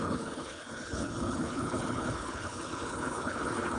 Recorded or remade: remade